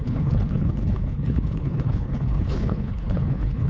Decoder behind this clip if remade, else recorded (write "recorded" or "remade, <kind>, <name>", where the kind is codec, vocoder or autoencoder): remade, codec, HILCodec